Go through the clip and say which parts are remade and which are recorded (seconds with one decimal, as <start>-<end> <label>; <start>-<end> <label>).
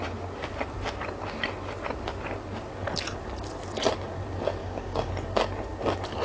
0.0-4.6 recorded; 4.6-5.1 remade; 5.1-6.2 recorded